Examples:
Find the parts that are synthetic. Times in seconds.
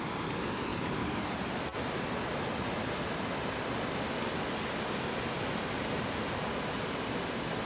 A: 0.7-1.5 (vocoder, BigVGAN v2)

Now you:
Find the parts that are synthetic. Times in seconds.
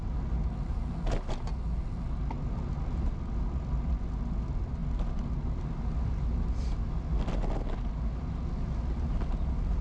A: none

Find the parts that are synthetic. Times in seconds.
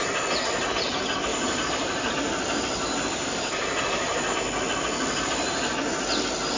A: 1.3-2.1 (vocoder, BigVGAN v2); 2.9-4.3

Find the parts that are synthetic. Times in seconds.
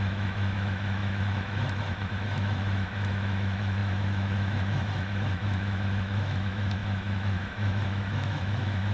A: 0.0-8.9 (autoencoder, DAC-VAE)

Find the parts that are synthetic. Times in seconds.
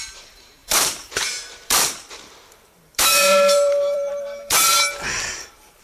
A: 0.0-5.8 (vocoder, BigVGAN v2)